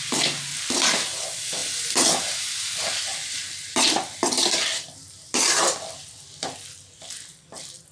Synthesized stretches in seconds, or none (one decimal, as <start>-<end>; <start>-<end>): 4.2-6.2